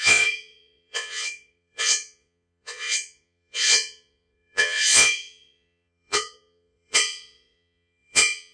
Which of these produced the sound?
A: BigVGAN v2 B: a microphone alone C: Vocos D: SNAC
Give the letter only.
C